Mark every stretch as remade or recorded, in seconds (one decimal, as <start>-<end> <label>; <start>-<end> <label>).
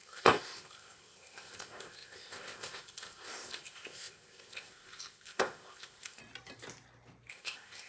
0.0-6.2 remade; 6.2-7.3 recorded; 7.3-7.9 remade